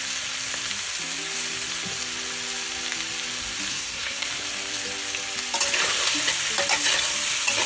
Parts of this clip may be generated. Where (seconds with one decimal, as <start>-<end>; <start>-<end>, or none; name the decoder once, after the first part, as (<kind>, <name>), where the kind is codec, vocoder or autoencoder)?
3.7-4.2 (codec, SNAC)